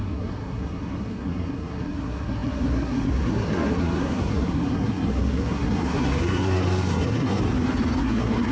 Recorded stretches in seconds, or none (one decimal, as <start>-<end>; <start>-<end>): 7.4-8.0